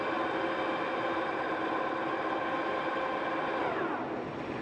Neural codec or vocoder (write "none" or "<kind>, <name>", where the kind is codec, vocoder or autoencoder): none